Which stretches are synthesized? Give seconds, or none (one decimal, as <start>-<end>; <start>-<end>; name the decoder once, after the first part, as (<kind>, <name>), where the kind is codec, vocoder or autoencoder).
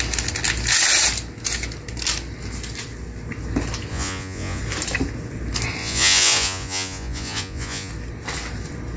3.9-4.6 (vocoder, Vocos); 5.8-7.9